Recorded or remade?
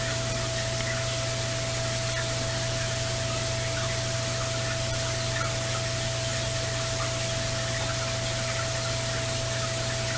recorded